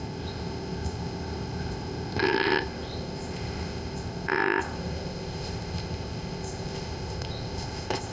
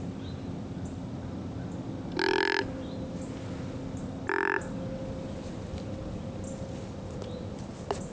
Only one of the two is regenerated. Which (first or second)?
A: first